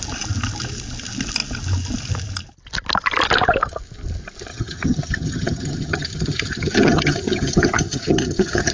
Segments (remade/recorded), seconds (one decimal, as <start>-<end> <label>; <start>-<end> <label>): 0.0-4.5 recorded; 4.5-8.7 remade